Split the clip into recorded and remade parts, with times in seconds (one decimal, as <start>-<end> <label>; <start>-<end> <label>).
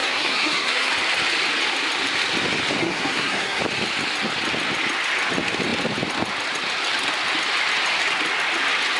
0.0-0.9 remade; 0.9-2.8 recorded; 2.8-3.6 remade; 3.6-9.0 recorded